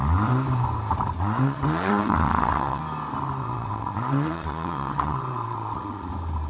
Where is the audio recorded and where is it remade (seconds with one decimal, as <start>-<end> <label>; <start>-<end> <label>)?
0.0-1.2 recorded; 1.2-2.8 remade; 2.8-3.4 recorded; 3.4-6.1 remade; 6.1-6.5 recorded